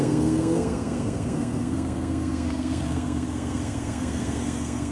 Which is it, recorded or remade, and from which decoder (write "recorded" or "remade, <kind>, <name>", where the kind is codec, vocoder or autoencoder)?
remade, codec, SNAC